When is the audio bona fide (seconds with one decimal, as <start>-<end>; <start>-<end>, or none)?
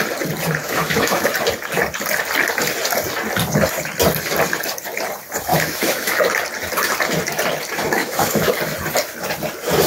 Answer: 0.0-0.6; 1.3-5.5; 6.2-8.0; 8.5-9.9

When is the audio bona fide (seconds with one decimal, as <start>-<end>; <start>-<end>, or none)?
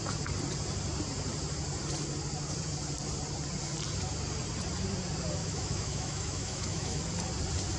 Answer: 0.0-5.4; 7.0-7.8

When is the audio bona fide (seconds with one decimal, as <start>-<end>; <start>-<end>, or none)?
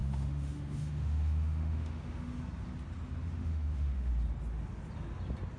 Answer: 2.3-3.2; 4.1-5.6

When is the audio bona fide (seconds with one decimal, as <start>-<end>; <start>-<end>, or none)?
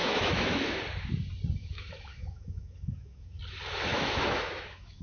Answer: 0.8-1.6; 3.4-3.9